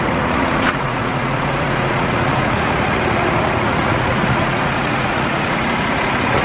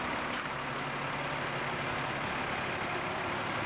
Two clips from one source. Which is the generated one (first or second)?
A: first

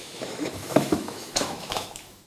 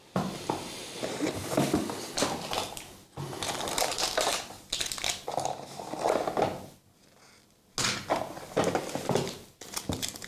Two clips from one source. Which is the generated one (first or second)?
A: first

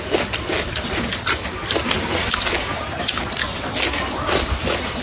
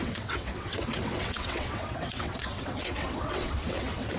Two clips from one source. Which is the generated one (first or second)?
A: second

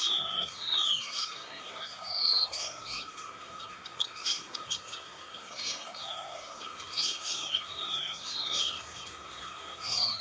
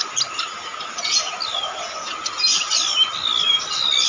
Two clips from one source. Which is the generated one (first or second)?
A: first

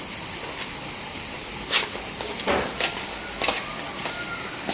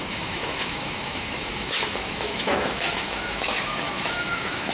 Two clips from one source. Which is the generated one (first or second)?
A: second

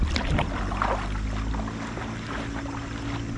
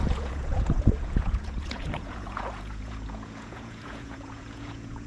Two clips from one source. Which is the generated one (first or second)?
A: second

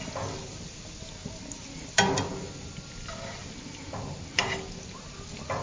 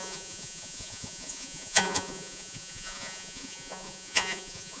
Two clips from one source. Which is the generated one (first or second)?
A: second